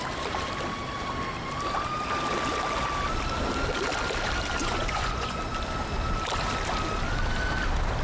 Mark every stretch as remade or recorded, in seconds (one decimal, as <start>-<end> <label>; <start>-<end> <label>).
0.0-4.6 recorded; 4.6-5.4 remade; 5.4-8.0 recorded